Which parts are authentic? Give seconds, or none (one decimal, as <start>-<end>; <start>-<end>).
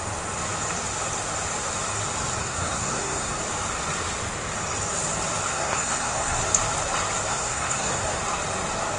0.0-2.4; 3.4-5.5; 6.4-7.3; 8.2-9.0